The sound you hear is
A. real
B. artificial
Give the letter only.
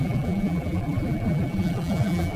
B